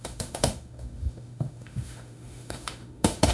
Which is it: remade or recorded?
remade